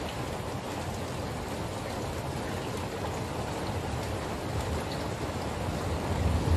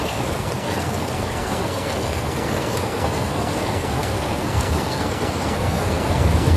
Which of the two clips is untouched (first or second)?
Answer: first